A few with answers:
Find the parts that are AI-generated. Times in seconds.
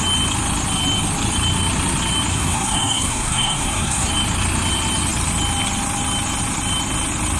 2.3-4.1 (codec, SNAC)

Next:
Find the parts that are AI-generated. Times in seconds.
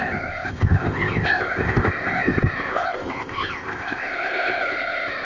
0.0-5.2 (codec, ZipCodec)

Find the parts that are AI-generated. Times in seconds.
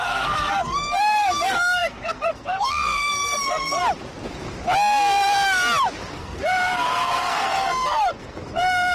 0.0-3.8 (codec, SNAC); 6.1-8.9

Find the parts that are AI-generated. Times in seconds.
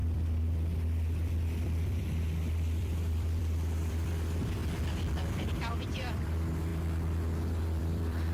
0.0-4.6 (vocoder, BigVGAN v2); 5.4-6.7; 7.8-8.3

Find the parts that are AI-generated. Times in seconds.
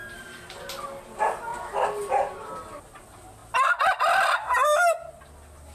0.0-0.8 (vocoder, BigVGAN v2)